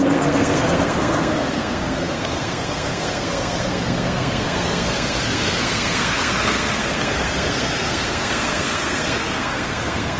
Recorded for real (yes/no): no